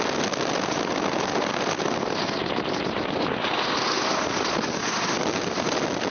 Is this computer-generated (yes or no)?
no